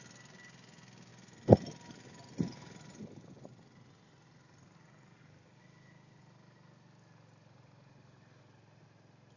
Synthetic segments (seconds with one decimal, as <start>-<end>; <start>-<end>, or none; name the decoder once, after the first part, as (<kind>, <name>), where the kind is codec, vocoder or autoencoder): none